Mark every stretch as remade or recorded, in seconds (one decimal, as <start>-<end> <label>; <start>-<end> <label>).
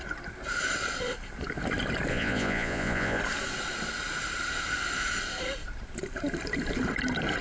0.0-2.1 recorded; 2.1-3.2 remade; 3.2-7.4 recorded